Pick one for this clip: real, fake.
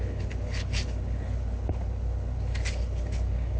fake